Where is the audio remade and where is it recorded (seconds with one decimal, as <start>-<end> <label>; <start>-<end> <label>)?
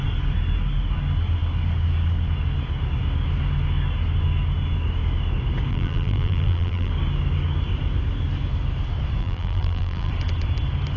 0.0-5.7 recorded; 5.7-6.9 remade; 6.9-9.2 recorded; 9.2-10.1 remade; 10.1-11.0 recorded